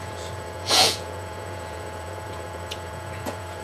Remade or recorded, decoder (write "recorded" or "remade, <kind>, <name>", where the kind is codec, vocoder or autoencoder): remade, vocoder, Vocos